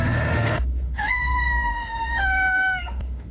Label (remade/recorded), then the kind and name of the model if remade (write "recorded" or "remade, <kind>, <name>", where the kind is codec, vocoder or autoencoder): remade, autoencoder, DAC-VAE